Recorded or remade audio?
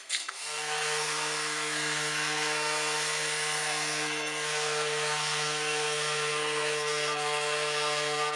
remade